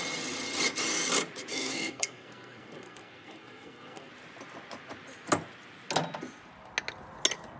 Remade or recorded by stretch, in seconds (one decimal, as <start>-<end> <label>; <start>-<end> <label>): 0.0-1.5 recorded; 1.5-4.1 remade; 4.1-7.6 recorded

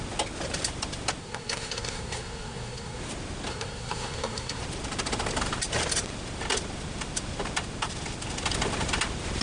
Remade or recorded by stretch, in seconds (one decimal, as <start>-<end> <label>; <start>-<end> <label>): 0.0-1.2 recorded; 1.2-3.0 remade; 3.0-3.5 recorded; 3.5-4.6 remade; 4.6-9.4 recorded

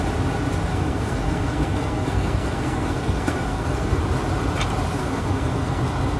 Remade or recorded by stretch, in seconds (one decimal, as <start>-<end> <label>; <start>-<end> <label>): 0.0-0.7 recorded; 0.7-4.0 remade; 4.0-5.0 recorded; 5.0-5.8 remade; 5.8-6.2 recorded